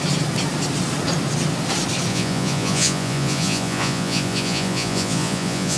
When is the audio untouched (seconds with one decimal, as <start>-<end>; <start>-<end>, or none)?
0.0-2.1